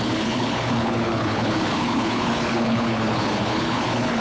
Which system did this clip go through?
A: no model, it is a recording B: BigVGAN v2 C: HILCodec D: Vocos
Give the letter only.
C